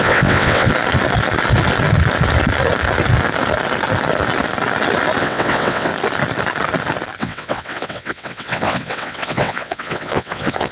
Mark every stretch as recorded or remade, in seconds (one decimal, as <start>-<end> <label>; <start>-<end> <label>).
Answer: 0.0-0.7 remade; 0.7-5.2 recorded; 5.2-5.9 remade; 5.9-7.2 recorded; 7.2-10.7 remade